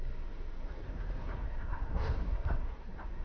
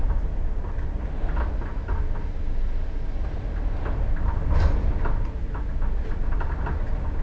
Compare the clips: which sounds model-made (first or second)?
first